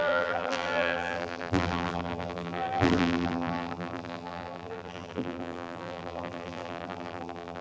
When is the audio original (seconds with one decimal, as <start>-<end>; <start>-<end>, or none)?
none